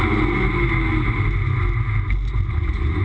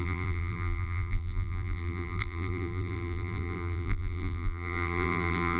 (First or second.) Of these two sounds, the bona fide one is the first